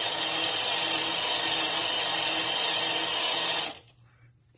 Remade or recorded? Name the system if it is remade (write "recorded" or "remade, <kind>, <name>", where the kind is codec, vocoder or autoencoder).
recorded